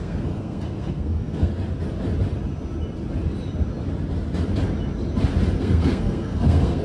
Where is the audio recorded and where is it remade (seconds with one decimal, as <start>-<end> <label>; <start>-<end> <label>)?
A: 0.0-1.5 remade; 1.5-5.6 recorded; 5.6-6.8 remade